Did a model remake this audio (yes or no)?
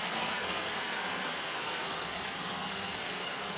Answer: yes